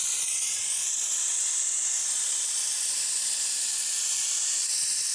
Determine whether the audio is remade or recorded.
remade